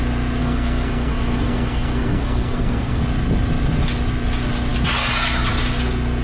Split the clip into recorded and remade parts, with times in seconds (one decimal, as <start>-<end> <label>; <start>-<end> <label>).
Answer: 0.0-0.4 recorded; 0.4-3.0 remade; 3.0-6.2 recorded